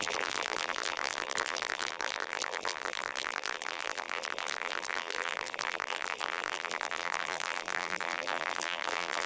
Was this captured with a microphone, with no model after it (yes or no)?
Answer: no